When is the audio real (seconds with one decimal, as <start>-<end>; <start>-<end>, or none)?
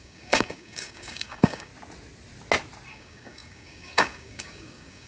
1.7-2.9